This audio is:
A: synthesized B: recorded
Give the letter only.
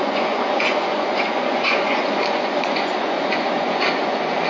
A